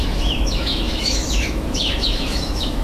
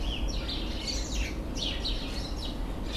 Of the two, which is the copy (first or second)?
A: first